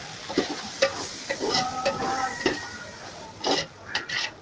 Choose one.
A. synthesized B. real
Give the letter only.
B